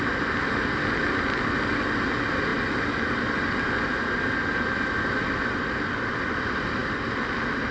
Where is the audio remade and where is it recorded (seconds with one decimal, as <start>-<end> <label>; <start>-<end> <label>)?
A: 0.0-7.7 recorded